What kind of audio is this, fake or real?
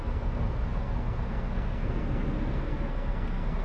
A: fake